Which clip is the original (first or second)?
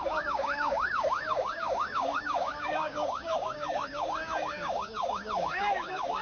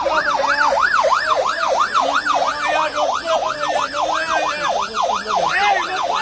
second